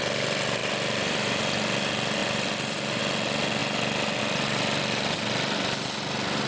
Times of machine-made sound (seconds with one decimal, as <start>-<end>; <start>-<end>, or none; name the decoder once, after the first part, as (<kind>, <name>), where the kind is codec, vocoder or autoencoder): 0.6-1.4 (vocoder, BigVGAN v2); 2.2-3.0